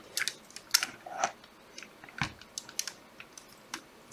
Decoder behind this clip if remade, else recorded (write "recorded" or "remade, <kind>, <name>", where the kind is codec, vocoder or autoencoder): recorded